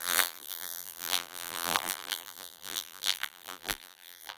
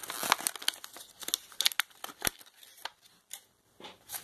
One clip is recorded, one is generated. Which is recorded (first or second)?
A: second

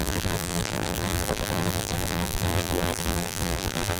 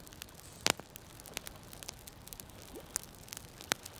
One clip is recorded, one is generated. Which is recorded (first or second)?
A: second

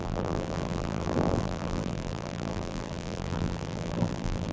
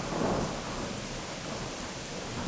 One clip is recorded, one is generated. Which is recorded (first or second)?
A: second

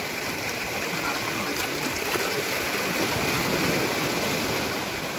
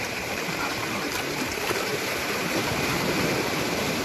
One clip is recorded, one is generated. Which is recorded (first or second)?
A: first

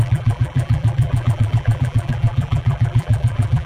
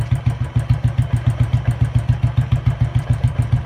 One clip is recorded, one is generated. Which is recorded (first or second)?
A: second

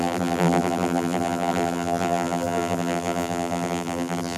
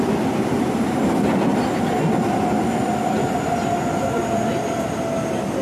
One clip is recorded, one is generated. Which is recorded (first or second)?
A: second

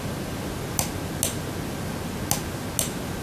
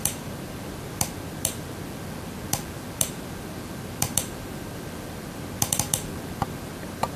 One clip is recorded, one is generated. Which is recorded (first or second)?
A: first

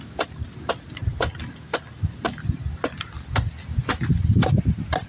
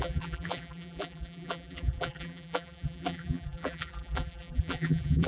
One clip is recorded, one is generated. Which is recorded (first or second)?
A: first